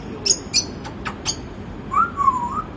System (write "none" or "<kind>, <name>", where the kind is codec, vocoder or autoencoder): none